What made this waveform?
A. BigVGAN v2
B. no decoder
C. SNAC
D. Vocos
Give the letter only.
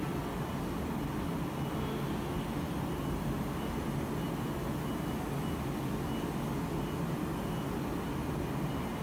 B